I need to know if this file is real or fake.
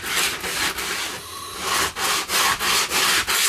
real